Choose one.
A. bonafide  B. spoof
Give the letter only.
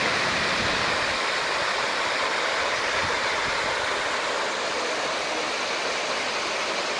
A